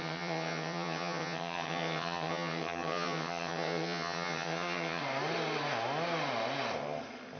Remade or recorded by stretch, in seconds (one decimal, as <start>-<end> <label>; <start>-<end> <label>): 0.0-5.0 remade; 5.0-7.4 recorded